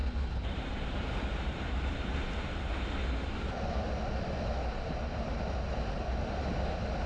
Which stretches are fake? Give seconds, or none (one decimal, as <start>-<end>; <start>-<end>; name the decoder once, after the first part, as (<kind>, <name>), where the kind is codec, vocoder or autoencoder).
0.0-2.6 (vocoder, BigVGAN v2); 3.0-3.9; 4.6-5.4